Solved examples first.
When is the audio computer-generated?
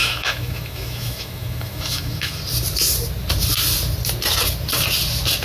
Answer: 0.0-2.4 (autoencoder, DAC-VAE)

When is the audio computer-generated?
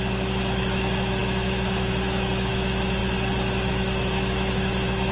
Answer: 0.0-3.0 (autoencoder, DAC-VAE); 3.7-5.1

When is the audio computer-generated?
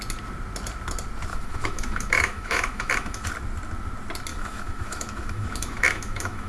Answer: 1.3-3.3 (autoencoder, DAC-VAE); 4.3-6.5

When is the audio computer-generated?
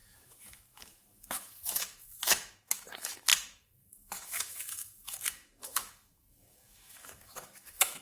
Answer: 0.0-8.0 (autoencoder, DAC-VAE)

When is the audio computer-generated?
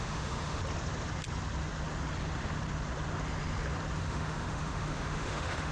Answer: 0.0-0.6 (autoencoder, DAC-VAE); 4.0-5.7